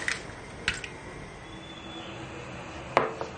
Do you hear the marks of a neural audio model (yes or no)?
no